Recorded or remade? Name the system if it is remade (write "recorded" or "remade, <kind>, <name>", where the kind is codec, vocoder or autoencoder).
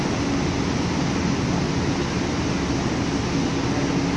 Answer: recorded